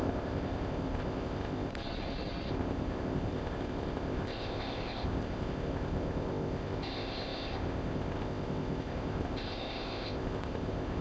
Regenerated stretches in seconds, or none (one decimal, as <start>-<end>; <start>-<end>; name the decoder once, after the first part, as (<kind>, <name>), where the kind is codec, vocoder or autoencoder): 0.0-1.7 (codec, ZipCodec); 2.5-11.0